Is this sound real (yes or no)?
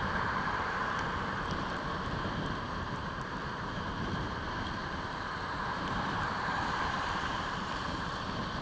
no